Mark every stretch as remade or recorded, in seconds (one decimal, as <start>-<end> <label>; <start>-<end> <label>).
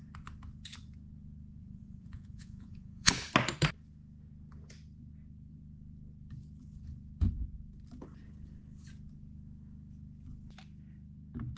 0.0-1.6 recorded; 1.6-3.1 remade; 3.1-11.6 recorded